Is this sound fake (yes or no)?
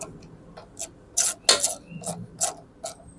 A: no